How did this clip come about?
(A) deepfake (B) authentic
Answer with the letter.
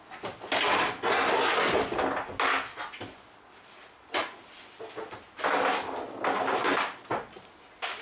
B